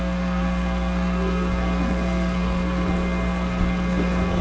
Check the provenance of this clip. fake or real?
fake